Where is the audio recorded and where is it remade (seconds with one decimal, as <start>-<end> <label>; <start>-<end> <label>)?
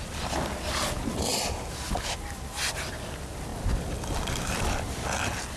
0.0-5.6 recorded